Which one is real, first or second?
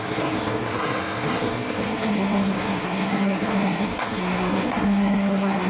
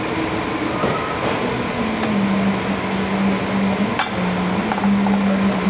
second